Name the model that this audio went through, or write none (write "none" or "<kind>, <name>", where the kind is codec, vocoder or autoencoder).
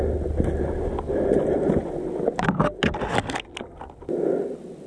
none